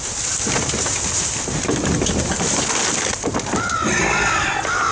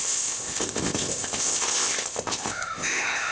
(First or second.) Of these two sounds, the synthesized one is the second